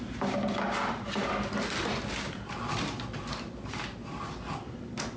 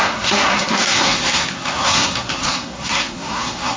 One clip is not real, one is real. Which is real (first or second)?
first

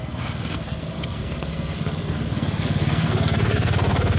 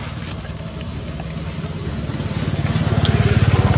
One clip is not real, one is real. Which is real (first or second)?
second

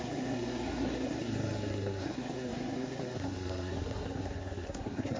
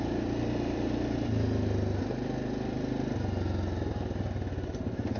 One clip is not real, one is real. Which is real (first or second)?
second